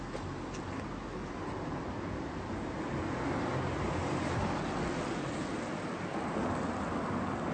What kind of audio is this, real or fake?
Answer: real